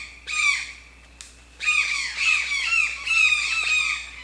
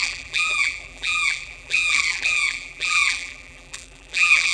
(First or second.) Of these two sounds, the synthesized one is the second